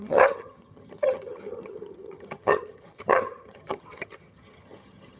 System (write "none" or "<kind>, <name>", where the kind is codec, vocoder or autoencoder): vocoder, HiFi-GAN